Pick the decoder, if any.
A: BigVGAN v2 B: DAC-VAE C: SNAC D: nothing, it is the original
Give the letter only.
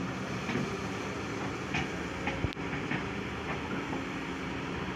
A